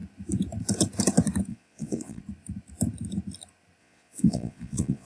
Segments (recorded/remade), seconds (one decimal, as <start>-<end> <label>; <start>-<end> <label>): 0.0-1.5 recorded; 1.5-2.2 remade; 2.2-3.8 recorded; 3.8-5.1 remade